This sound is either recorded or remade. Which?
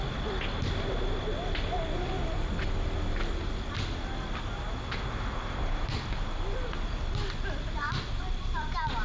recorded